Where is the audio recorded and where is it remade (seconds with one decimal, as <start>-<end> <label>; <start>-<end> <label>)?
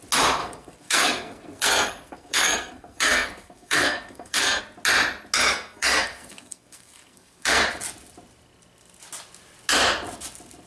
0.0-0.4 recorded; 0.4-4.6 remade; 4.6-5.5 recorded; 5.5-7.6 remade; 7.6-10.7 recorded